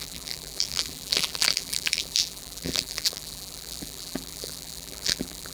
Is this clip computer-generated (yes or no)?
yes